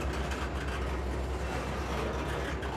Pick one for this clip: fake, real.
real